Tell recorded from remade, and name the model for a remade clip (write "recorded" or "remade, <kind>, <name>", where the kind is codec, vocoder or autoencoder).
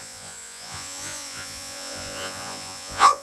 remade, vocoder, Vocos